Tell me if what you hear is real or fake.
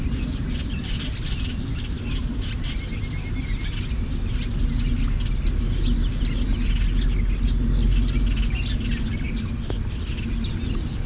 real